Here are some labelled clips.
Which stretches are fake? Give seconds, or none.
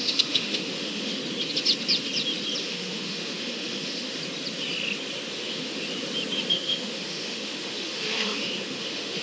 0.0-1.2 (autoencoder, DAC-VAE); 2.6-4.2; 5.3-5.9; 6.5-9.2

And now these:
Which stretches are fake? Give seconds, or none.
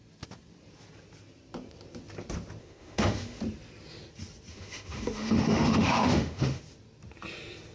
2.6-3.4 (autoencoder, DAC-VAE); 4.5-6.6